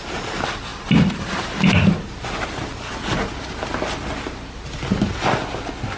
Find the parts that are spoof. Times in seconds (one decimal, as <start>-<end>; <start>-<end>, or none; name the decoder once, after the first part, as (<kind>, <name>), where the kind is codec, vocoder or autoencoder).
none